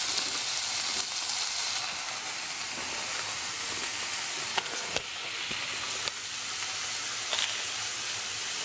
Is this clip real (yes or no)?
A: yes